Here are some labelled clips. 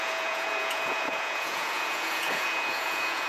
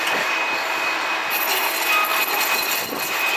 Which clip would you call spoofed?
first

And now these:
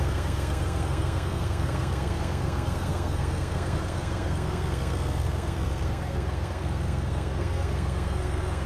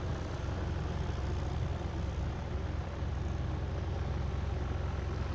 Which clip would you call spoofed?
first